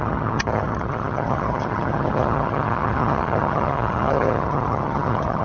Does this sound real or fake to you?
fake